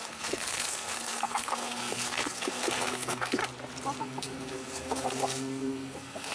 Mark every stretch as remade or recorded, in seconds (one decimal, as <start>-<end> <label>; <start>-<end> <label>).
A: 0.0-3.4 remade; 3.4-4.0 recorded; 4.0-6.3 remade